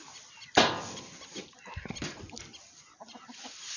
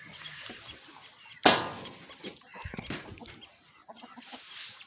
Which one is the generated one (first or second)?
first